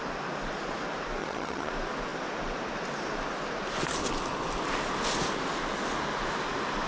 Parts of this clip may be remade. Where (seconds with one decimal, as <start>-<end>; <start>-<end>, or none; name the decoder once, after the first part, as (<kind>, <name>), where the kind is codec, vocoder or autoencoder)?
1.2-1.7 (vocoder, HiFi-GAN)